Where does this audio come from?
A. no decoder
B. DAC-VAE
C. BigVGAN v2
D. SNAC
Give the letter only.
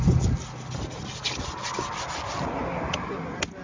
A